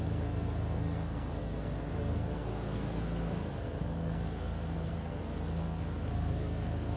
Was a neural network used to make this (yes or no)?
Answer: yes